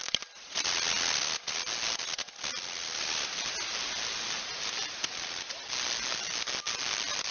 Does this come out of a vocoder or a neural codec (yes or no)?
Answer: no